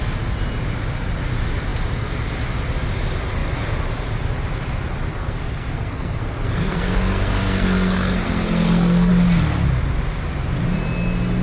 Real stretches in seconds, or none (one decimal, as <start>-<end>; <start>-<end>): 0.0-5.1; 9.1-11.4